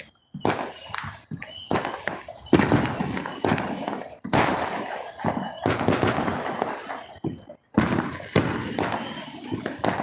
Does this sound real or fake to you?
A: real